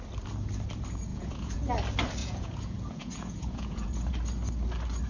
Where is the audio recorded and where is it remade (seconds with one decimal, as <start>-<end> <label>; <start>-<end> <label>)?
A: 0.0-1.1 recorded; 1.1-1.7 remade; 1.7-2.2 recorded; 2.2-4.1 remade; 4.1-5.1 recorded